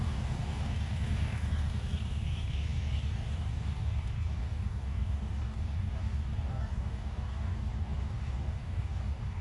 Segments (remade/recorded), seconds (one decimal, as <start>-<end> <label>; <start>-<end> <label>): 0.0-9.4 remade